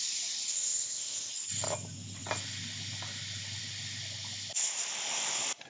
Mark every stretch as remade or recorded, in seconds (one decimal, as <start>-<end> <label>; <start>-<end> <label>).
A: 0.0-0.5 recorded; 0.5-1.3 remade; 1.3-5.7 recorded